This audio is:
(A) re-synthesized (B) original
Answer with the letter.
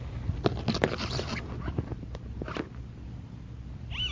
B